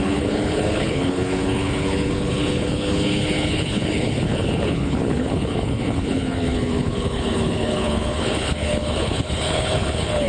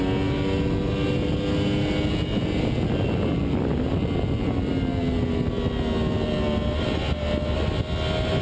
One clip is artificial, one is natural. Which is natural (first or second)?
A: second